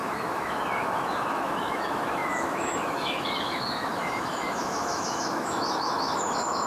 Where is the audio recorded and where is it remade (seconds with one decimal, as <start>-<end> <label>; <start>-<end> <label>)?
0.0-6.7 remade